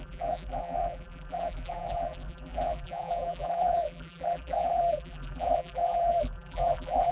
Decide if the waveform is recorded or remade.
remade